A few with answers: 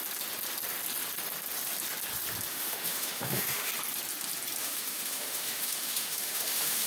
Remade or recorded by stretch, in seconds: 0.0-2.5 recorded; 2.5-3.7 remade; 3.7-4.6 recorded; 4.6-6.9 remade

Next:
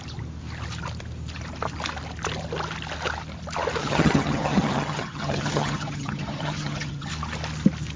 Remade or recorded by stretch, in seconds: 0.0-3.8 recorded; 3.8-7.1 remade; 7.1-8.0 recorded

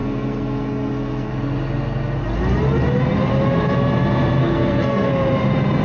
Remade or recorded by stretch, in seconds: 0.0-1.3 remade; 1.3-4.4 recorded; 4.4-5.1 remade; 5.1-5.8 recorded